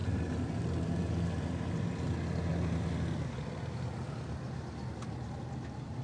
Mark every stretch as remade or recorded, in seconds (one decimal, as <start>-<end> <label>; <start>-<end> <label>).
0.0-6.0 recorded